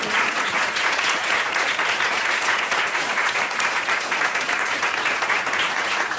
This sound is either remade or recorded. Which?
remade